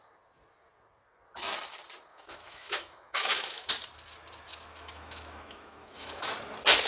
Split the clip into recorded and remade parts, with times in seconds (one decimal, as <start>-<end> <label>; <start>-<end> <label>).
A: 0.0-2.1 recorded; 2.1-3.7 remade; 3.7-4.5 recorded; 4.5-6.3 remade; 6.3-6.9 recorded